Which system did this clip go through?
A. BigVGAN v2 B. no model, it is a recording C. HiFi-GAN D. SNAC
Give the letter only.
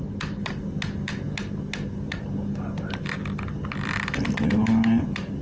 B